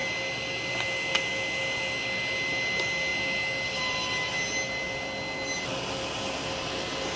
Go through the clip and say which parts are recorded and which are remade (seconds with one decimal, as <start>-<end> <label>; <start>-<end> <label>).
0.0-7.2 recorded